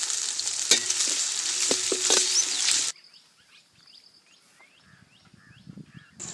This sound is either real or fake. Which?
real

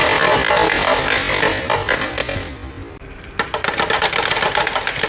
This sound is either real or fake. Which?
real